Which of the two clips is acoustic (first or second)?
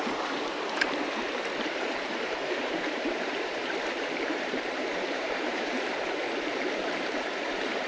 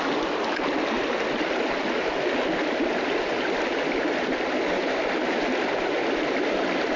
second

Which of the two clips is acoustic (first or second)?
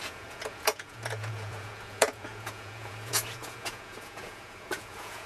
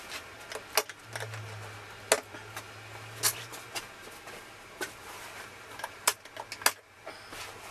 second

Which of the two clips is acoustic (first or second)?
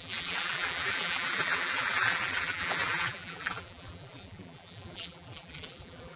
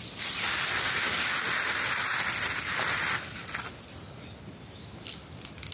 second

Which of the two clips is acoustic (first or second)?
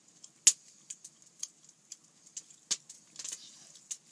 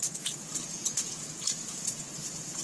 first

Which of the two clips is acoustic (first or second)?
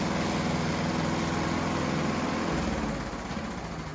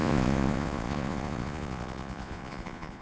first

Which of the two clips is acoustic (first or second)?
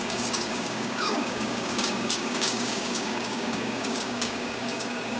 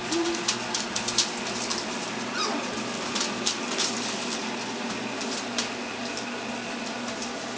second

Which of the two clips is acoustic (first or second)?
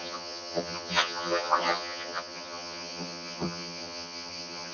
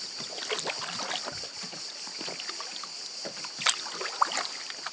second